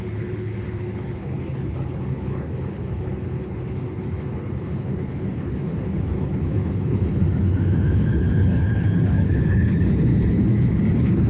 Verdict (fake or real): fake